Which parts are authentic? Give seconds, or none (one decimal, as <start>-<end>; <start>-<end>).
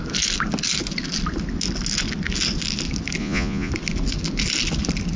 0.0-3.2; 3.7-5.2